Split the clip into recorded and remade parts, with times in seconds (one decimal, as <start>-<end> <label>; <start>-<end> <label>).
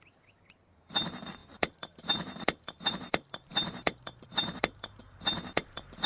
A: 0.0-6.1 remade